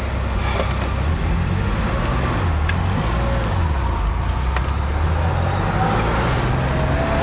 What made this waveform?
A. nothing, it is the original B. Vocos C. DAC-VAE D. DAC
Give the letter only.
A